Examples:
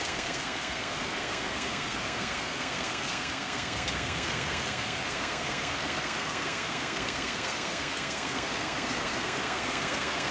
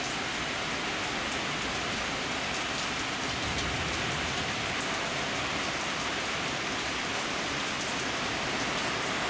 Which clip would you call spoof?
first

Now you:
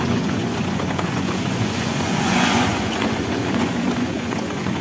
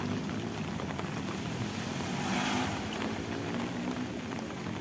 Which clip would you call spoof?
first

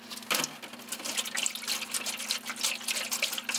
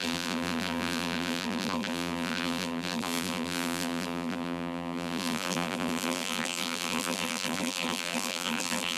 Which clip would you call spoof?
second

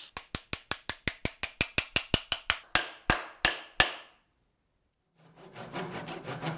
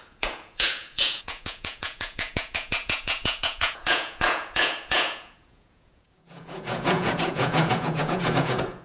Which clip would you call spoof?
second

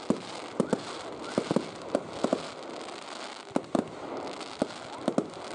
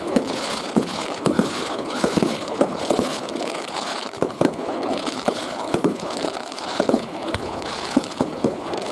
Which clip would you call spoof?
second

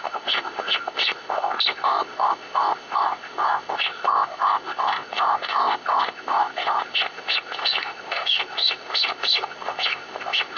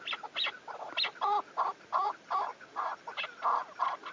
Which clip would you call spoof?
first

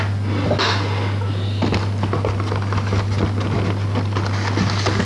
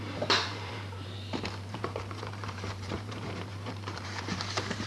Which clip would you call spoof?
second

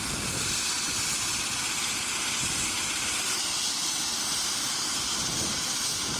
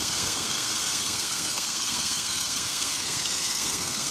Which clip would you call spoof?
second